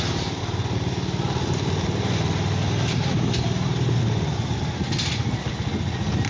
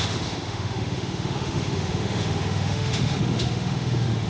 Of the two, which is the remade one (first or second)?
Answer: second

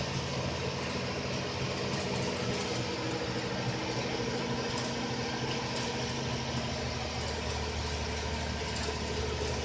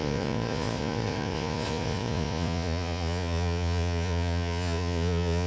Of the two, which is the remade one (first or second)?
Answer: second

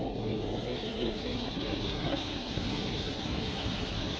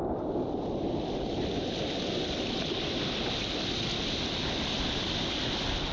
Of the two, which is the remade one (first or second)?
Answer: first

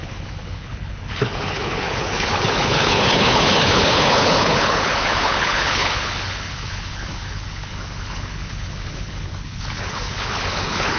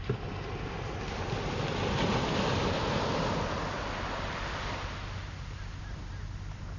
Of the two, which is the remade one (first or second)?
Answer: first